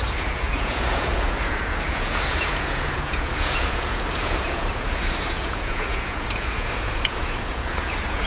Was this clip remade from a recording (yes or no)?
yes